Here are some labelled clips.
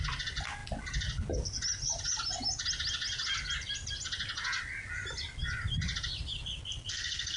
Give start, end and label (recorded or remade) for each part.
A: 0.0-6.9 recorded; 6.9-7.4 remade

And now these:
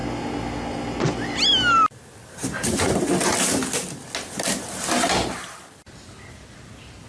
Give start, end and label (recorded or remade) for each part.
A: 0.0-7.1 recorded

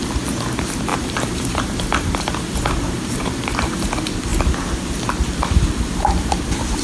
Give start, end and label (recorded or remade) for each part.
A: 0.0-0.9 recorded; 0.9-3.7 remade; 3.7-4.3 recorded; 4.3-4.8 remade; 4.8-6.8 recorded

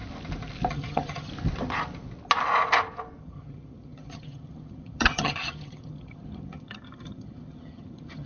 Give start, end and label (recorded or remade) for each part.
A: 0.0-0.7 recorded; 0.7-1.3 remade; 1.3-3.2 recorded; 3.2-8.3 remade

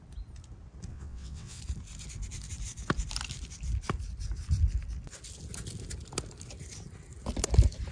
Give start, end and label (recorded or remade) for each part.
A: 0.0-0.9 recorded; 0.9-1.6 remade; 1.6-7.9 recorded

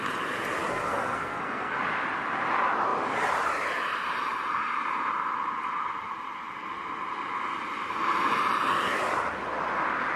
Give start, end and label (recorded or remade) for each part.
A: 0.0-0.7 recorded; 0.7-1.8 remade; 1.8-10.2 recorded